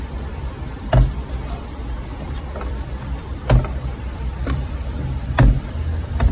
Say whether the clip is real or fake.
fake